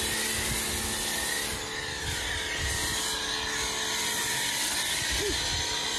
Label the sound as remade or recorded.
recorded